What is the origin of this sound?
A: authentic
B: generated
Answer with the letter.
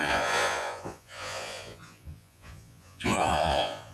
B